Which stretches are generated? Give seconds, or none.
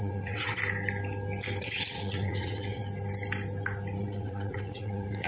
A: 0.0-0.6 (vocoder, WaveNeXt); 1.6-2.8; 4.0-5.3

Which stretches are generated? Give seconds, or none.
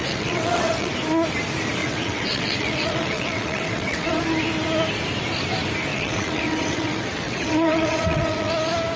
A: 0.0-0.9 (vocoder, WaveNeXt); 1.8-4.2; 5.9-8.5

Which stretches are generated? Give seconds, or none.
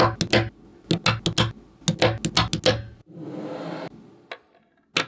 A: none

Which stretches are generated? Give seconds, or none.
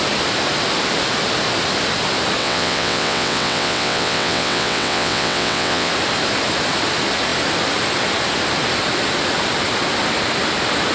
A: 2.4-5.9 (vocoder, WaveNeXt)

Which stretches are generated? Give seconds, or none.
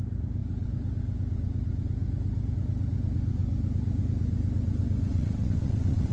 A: 5.1-6.1 (vocoder, WaveNeXt)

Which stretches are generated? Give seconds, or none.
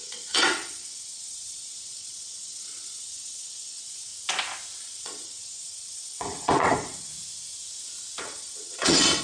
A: 0.0-4.1 (vocoder, WaveNeXt); 4.8-7.1; 8.2-9.2